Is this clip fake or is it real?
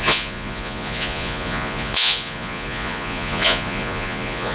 fake